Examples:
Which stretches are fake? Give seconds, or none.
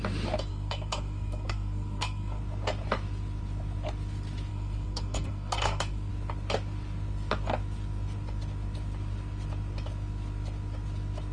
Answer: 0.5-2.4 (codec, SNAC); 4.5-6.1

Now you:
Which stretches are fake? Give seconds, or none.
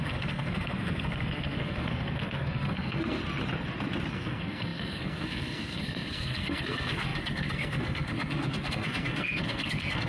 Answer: 0.0-3.2 (codec, SNAC); 4.1-10.1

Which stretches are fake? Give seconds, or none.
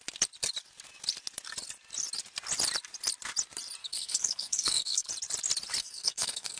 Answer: 3.8-5.1 (codec, SNAC); 5.8-6.6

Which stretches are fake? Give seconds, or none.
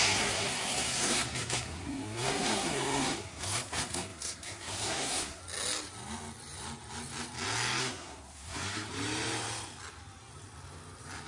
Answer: 0.0-5.4 (codec, SNAC); 7.8-8.9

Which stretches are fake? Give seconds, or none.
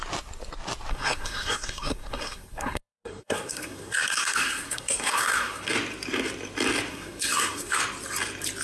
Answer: 0.9-5.7 (codec, SNAC); 6.9-7.8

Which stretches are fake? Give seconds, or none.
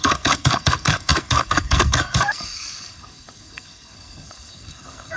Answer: 0.0-5.2 (codec, SNAC)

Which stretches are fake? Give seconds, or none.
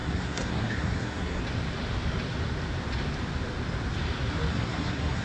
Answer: 0.0-1.4 (codec, SNAC); 4.5-5.2